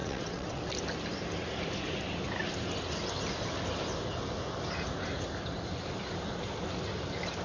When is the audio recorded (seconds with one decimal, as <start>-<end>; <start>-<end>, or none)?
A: 0.6-7.4